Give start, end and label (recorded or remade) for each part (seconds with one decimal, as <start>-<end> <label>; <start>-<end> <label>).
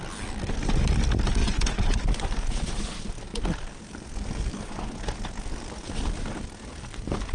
0.0-1.4 recorded; 1.4-2.0 remade; 2.0-7.3 recorded